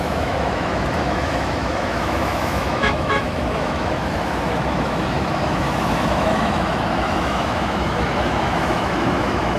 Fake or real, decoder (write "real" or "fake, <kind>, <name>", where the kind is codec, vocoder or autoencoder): fake, autoencoder, DAC-VAE